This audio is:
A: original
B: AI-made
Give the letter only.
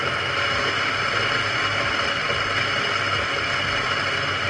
A